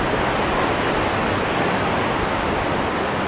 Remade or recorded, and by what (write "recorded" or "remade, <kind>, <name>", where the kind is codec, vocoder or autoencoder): recorded